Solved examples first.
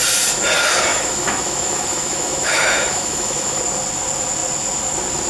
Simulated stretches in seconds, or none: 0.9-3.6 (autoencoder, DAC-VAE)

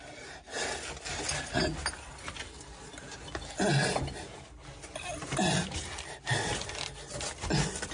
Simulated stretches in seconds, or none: none

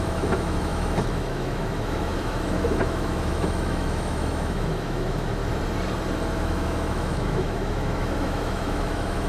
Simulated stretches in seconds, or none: 0.0-5.4 (autoencoder, DAC-VAE); 6.4-9.3

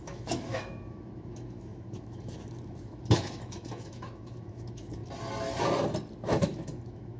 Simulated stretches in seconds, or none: 0.0-5.0 (autoencoder, DAC-VAE); 6.4-7.2

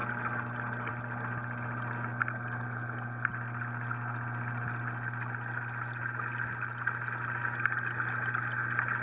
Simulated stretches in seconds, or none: none